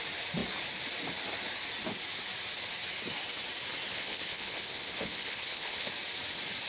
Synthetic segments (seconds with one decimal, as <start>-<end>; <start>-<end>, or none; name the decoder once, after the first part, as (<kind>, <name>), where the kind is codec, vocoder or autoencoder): 3.9-5.9 (codec, HILCodec)